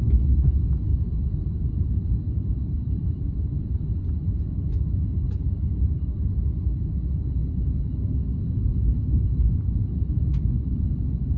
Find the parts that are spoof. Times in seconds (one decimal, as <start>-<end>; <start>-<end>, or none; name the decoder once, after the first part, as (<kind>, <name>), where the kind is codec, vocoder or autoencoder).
0.9-4.4 (vocoder, BigVGAN v2)